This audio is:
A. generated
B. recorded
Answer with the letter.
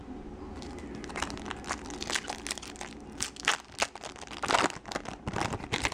B